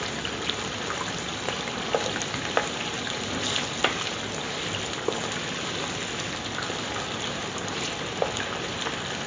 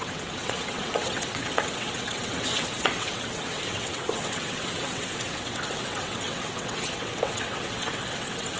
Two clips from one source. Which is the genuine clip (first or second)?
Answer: first